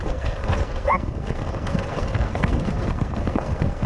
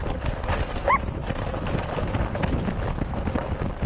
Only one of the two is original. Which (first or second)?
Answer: second